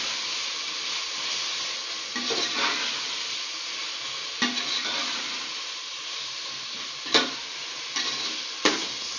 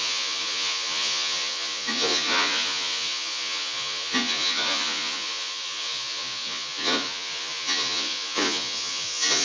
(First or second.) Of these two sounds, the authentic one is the first